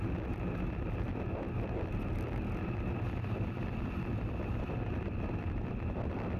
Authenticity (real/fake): real